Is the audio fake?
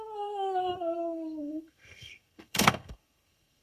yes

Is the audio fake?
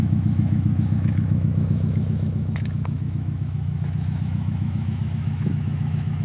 yes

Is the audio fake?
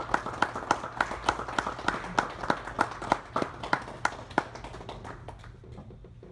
no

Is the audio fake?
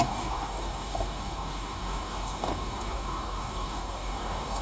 yes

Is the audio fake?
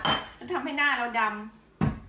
no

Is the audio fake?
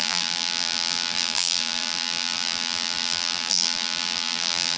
yes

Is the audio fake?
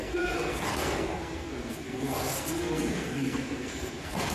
yes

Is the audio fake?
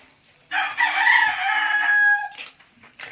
no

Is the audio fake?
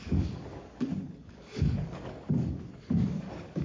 yes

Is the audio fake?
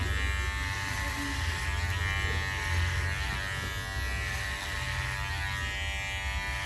no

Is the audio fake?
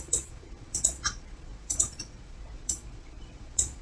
yes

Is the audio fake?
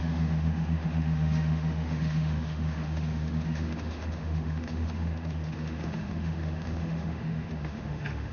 yes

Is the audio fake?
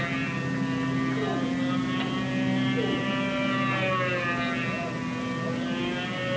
no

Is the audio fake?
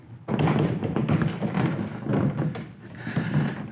no